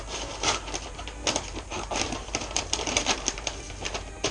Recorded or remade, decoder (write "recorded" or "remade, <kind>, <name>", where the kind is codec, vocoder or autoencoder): recorded